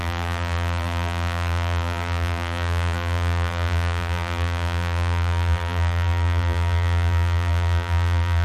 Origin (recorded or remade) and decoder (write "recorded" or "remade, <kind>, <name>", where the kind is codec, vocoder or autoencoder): remade, vocoder, BigVGAN v2